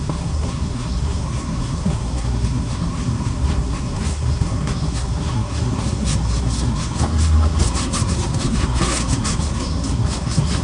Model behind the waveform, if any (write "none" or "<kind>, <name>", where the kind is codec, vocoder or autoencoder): codec, SNAC